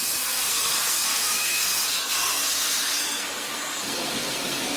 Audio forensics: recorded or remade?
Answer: remade